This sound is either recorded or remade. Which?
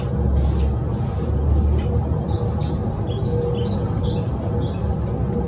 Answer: recorded